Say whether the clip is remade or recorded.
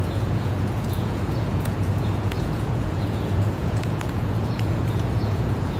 remade